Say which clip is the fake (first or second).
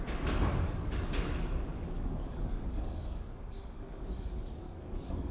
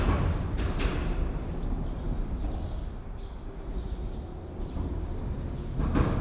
first